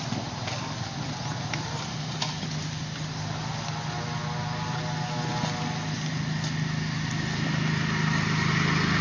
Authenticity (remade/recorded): recorded